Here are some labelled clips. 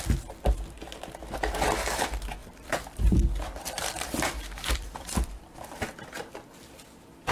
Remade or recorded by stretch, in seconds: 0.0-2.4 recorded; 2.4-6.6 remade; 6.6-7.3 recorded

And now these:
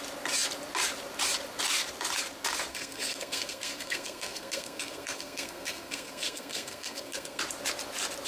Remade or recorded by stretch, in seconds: 0.0-2.7 recorded; 2.7-7.4 remade; 7.4-8.3 recorded

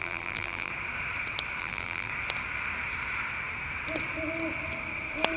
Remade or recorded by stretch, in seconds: 0.0-0.7 remade; 0.7-1.6 recorded; 1.6-2.1 remade; 2.1-5.4 recorded

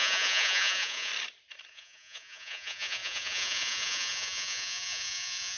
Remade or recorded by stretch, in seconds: 0.0-1.1 remade; 1.1-1.7 recorded; 1.7-5.6 remade

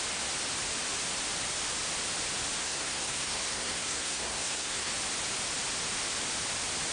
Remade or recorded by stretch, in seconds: 0.0-2.6 recorded; 2.6-4.9 remade; 4.9-6.9 recorded